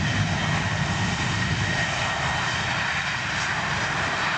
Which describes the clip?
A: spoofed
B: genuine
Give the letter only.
B